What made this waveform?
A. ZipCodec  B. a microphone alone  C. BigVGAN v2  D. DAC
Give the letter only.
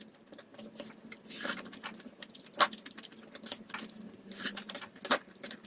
B